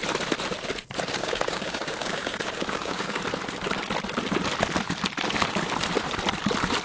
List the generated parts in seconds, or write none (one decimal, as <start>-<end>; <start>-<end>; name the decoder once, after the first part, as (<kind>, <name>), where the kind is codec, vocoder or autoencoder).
1.2-3.2 (codec, DAC)